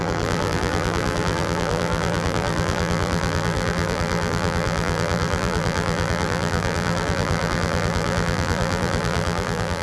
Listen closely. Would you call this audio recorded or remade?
remade